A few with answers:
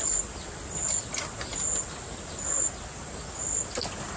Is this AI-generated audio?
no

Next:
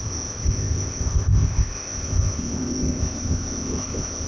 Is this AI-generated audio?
yes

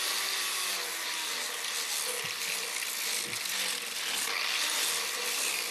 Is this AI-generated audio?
no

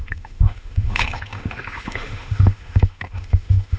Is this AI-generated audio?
yes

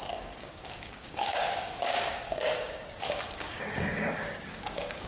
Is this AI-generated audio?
yes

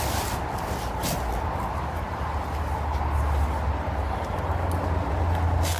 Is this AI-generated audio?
no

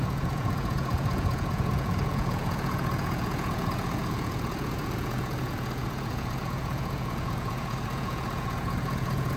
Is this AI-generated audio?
yes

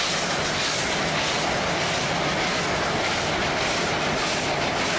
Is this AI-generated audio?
no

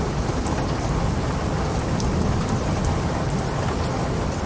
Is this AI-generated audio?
no